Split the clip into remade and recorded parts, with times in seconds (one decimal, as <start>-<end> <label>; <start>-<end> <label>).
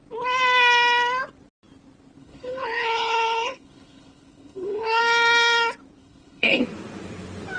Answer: 0.0-2.2 recorded; 2.2-5.0 remade; 5.0-6.0 recorded; 6.0-6.6 remade; 6.6-7.6 recorded